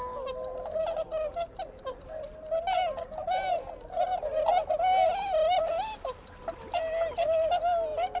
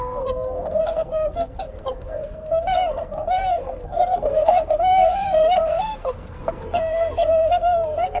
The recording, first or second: first